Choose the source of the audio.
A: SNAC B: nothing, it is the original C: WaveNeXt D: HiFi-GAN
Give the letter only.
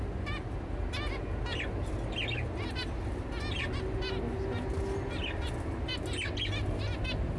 B